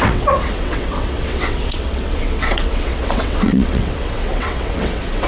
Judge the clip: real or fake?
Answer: fake